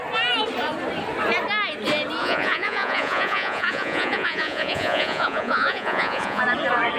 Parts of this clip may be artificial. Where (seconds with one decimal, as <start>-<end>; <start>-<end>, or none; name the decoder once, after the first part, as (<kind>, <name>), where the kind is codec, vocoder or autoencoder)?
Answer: 2.2-6.4 (vocoder, Vocos)